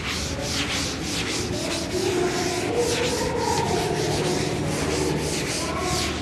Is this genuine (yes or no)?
yes